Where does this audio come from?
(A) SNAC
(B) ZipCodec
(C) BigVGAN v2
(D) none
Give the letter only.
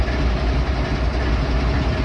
D